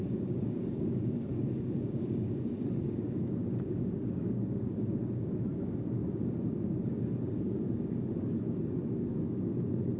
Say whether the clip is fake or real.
fake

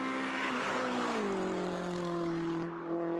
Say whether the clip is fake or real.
fake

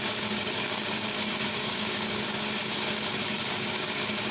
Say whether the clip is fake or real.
fake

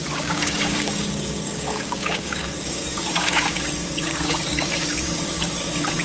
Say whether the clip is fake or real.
fake